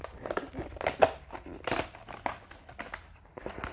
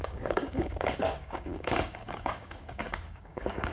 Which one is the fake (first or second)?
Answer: second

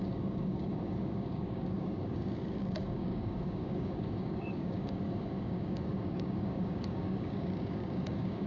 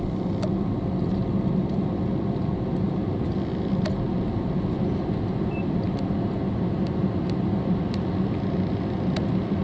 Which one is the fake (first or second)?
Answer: first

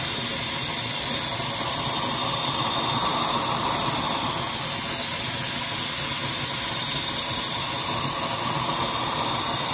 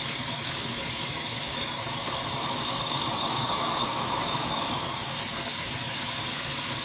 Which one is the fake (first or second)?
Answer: second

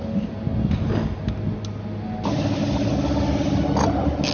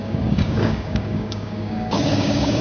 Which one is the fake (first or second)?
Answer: second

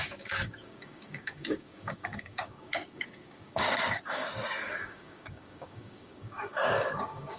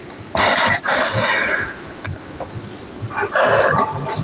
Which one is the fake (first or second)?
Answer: first